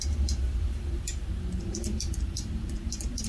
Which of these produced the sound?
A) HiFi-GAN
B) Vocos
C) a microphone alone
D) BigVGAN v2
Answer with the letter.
D